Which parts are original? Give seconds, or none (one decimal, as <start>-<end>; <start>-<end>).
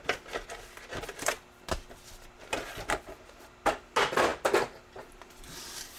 0.0-6.0